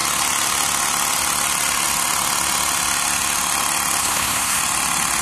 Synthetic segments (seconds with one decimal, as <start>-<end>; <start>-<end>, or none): 4.0-4.6